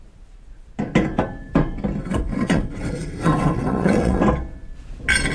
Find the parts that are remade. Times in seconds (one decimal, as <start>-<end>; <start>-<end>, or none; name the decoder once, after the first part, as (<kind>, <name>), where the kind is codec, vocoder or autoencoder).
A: 2.0-4.2 (vocoder, WaveNeXt)